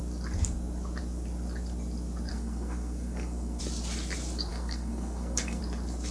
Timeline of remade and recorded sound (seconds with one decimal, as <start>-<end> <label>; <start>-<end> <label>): 0.0-2.3 recorded; 2.3-3.6 remade; 3.6-4.5 recorded; 4.5-5.6 remade; 5.6-6.1 recorded